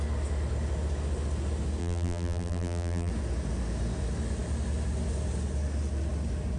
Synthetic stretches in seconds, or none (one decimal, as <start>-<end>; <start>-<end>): 1.8-3.1